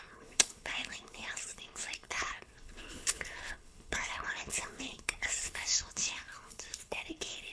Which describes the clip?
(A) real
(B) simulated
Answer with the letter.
B